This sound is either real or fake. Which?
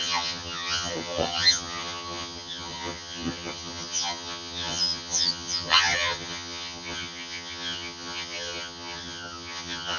fake